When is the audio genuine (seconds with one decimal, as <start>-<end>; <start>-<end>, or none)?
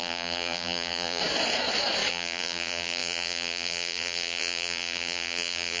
1.2-2.1